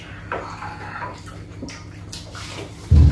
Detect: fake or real real